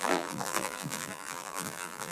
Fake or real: fake